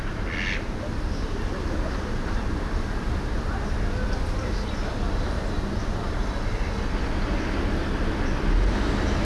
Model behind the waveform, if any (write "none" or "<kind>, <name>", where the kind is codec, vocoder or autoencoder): none